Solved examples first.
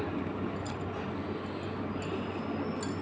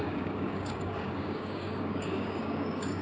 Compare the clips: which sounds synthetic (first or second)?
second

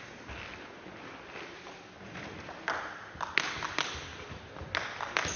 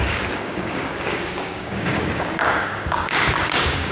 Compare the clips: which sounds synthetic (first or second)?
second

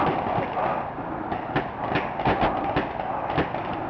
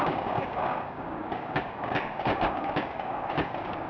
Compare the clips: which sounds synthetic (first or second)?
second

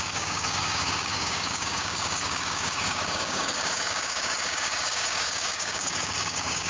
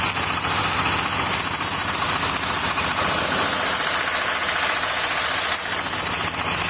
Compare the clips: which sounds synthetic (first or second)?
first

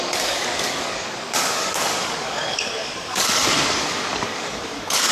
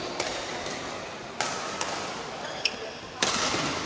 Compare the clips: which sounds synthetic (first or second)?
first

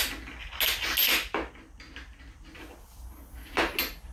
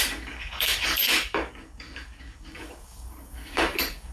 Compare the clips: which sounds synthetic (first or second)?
second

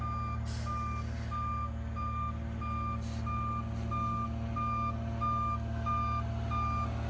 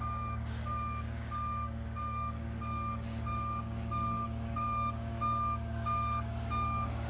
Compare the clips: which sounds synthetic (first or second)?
second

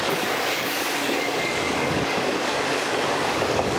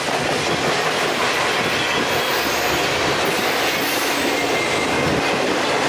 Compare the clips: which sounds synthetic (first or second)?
first